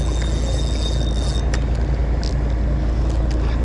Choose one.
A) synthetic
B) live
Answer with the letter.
B